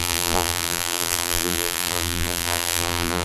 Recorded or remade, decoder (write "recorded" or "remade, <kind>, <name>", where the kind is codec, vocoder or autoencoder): remade, vocoder, BigVGAN v2